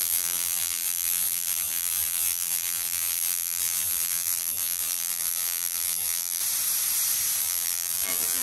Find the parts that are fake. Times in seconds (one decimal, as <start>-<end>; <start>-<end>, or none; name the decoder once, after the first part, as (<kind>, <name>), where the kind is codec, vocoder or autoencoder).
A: 0.0-6.4 (vocoder, BigVGAN v2); 7.4-8.4

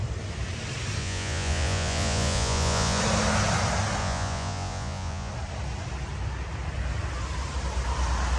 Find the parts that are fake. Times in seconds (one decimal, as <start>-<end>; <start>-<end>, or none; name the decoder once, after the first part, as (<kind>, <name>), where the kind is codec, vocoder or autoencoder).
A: 1.0-3.0 (vocoder, Vocos); 4.0-5.3